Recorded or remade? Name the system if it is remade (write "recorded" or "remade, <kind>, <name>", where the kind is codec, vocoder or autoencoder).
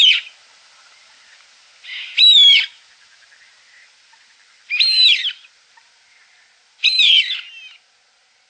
recorded